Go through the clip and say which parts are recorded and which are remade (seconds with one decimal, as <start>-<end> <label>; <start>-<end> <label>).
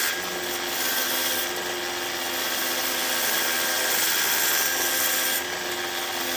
0.0-6.4 recorded